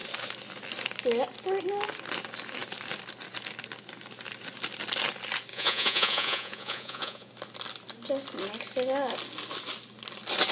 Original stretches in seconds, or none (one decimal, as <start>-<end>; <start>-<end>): 0.0-5.5; 7.3-10.5